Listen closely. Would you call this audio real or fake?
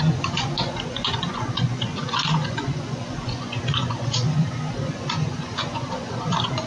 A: fake